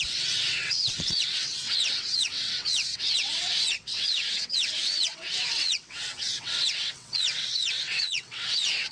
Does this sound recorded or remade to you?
remade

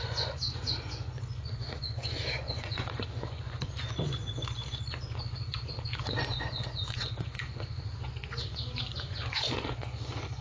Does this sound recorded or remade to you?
remade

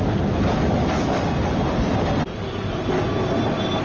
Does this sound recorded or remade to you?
recorded